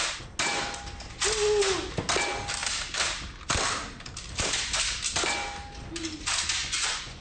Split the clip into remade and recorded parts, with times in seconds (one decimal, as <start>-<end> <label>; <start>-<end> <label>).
0.0-6.6 recorded; 6.6-7.2 remade